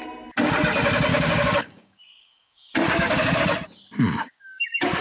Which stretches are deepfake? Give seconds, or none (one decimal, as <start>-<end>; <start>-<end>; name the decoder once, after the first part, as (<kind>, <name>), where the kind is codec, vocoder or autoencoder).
1.1-3.4 (codec, DAC); 4.2-5.0